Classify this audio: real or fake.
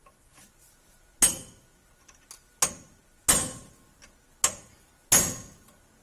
real